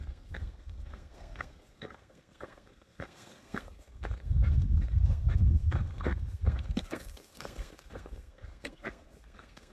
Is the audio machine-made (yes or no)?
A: yes